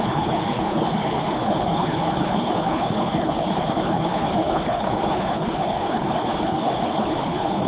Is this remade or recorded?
remade